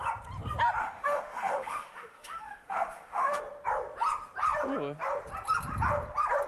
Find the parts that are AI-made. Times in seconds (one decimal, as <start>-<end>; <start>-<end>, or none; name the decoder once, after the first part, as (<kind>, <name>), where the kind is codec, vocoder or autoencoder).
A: 0.8-3.4 (autoencoder, DAC-VAE)

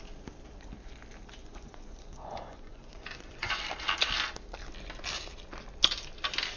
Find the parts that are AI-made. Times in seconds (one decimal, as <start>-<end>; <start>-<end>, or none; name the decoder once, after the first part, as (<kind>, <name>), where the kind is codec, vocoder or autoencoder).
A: 1.4-3.6 (vocoder, Vocos)